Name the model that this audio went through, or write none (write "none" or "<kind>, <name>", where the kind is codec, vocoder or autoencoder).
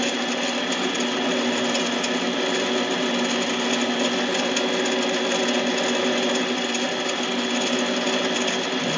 none